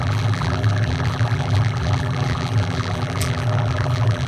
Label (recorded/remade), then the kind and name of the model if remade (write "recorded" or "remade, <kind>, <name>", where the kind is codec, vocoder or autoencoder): remade, vocoder, BigVGAN v2